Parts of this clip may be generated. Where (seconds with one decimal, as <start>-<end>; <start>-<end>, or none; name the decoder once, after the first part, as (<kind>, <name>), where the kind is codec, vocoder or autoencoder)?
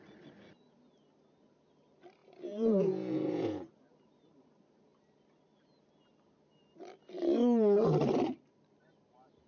2.2-3.7 (vocoder, Vocos)